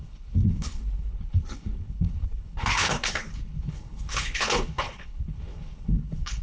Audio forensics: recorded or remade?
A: remade